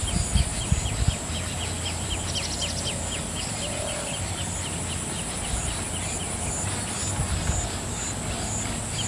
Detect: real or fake real